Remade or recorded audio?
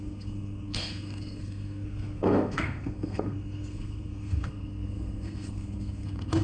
remade